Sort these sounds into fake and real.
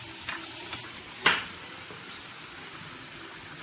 real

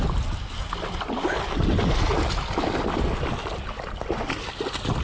real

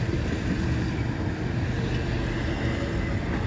real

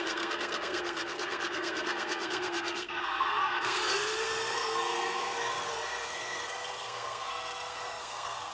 fake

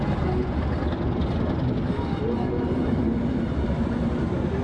real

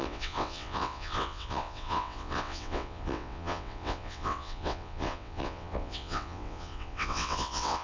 fake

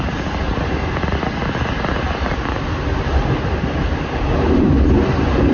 real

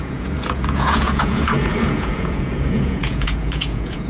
fake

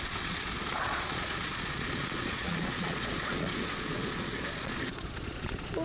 fake